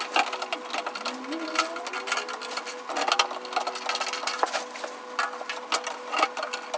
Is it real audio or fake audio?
real